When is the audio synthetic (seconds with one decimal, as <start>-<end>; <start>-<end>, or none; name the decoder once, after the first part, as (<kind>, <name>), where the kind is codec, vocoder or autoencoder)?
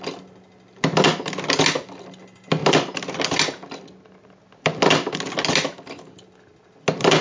none